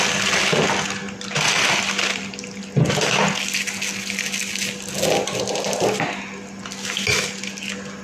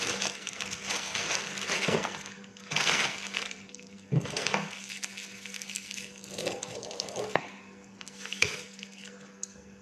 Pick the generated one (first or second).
second